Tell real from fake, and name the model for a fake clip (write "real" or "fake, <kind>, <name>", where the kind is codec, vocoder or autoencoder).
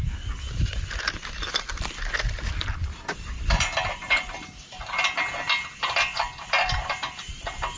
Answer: fake, vocoder, BigVGAN v2